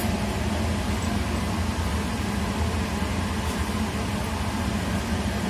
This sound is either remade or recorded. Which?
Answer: recorded